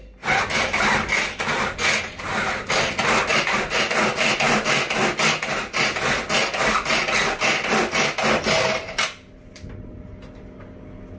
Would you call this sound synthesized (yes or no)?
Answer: no